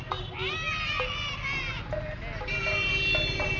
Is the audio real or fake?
real